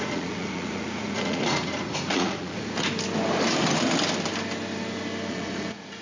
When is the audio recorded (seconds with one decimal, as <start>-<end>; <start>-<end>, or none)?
2.9-5.3